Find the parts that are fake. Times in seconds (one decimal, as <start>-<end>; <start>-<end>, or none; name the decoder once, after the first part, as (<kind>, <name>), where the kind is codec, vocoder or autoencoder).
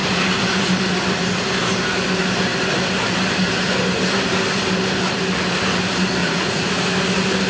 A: 6.2-6.8 (vocoder, Vocos)